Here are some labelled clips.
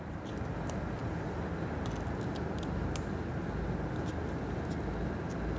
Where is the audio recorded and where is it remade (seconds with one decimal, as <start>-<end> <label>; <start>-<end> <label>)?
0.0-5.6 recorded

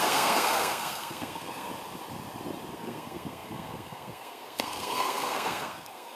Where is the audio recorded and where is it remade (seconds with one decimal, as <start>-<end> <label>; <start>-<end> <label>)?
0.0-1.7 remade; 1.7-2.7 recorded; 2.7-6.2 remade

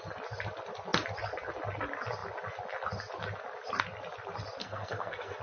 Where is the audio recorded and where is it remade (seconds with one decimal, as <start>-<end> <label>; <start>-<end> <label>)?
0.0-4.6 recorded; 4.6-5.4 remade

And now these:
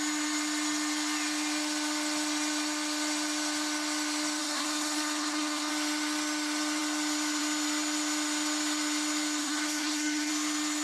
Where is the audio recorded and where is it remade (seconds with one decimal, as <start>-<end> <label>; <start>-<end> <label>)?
0.0-4.4 recorded; 4.4-5.7 remade; 5.7-9.4 recorded; 9.4-10.3 remade; 10.3-10.8 recorded

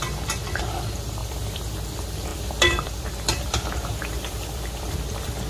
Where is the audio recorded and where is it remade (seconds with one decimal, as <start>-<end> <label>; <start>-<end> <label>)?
0.0-1.2 recorded; 1.2-1.7 remade; 1.7-2.3 recorded; 2.3-5.5 remade

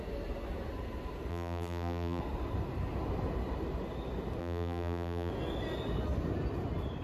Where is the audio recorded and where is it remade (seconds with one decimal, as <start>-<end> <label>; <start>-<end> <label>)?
0.0-1.3 recorded; 1.3-2.2 remade; 2.2-4.4 recorded; 4.4-5.3 remade; 5.3-7.0 recorded

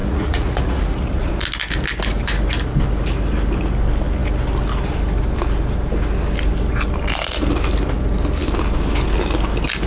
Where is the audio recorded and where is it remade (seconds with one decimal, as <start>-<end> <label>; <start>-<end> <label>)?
0.0-1.3 remade; 1.3-9.9 recorded

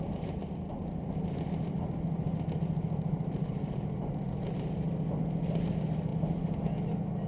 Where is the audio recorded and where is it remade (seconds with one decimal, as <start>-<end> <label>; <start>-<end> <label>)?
0.0-7.3 recorded